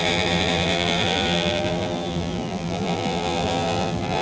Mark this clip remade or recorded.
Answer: remade